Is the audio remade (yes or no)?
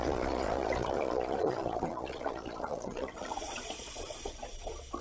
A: yes